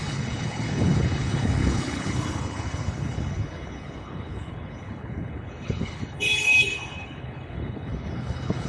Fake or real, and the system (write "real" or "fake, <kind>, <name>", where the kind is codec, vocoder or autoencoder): fake, codec, HILCodec